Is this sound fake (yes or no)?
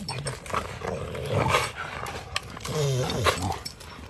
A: no